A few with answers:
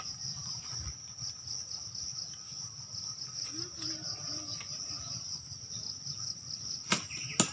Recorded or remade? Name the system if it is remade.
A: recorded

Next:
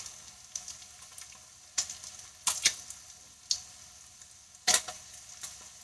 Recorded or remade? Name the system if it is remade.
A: recorded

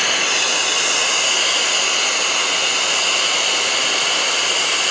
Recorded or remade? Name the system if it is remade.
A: recorded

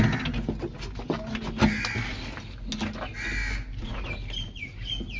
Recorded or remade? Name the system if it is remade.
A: recorded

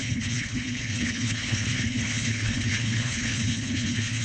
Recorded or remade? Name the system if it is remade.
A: remade, codec, HILCodec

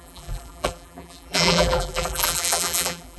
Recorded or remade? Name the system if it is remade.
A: remade, vocoder, BigVGAN v2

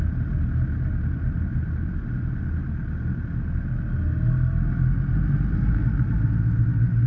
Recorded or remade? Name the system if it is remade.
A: recorded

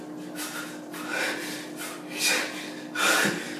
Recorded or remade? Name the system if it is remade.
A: recorded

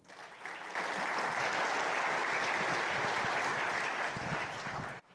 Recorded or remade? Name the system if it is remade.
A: recorded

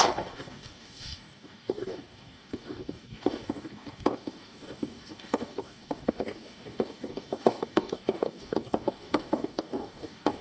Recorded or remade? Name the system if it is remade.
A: remade, codec, DAC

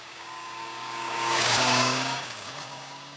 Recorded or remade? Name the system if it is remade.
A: remade, codec, DAC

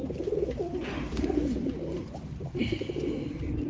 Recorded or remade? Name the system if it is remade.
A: remade, vocoder, BigVGAN v2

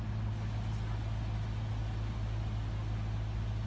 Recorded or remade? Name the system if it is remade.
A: recorded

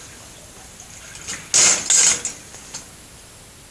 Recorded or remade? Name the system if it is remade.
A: recorded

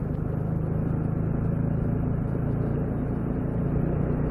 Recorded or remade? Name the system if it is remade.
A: recorded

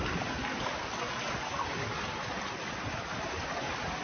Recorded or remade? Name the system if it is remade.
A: recorded